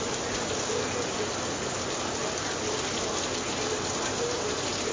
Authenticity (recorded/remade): recorded